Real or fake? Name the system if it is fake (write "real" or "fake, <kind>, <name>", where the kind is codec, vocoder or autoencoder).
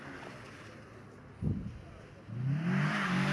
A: real